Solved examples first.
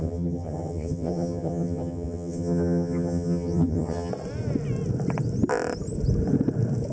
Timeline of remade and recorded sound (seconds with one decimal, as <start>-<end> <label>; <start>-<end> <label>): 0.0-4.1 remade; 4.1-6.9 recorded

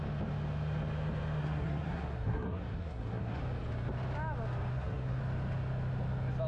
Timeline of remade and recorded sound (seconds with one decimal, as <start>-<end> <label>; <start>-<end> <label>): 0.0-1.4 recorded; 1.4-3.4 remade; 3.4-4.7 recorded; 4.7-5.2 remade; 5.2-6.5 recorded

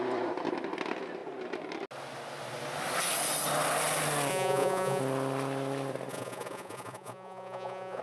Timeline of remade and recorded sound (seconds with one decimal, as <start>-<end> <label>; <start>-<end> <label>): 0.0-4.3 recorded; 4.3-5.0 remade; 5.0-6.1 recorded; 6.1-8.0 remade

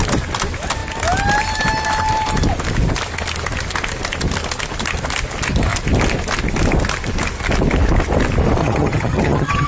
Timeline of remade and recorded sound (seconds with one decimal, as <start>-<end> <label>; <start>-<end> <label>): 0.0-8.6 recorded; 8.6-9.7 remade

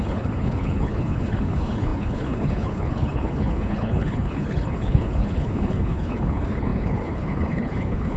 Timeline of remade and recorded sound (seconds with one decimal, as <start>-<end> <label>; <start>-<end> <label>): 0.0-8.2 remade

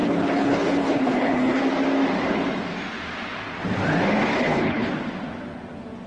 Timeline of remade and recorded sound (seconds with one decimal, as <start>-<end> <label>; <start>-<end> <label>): 0.0-1.6 remade; 1.6-4.3 recorded; 4.3-4.9 remade; 4.9-6.1 recorded